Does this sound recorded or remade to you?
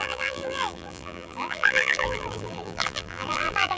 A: remade